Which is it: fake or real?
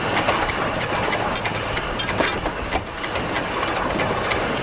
real